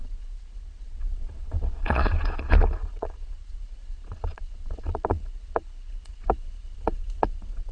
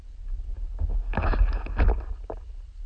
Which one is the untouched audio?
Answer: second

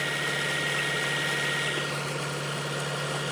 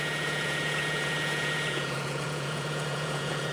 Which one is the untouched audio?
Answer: first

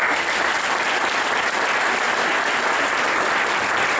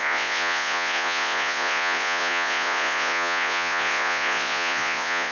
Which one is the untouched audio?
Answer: first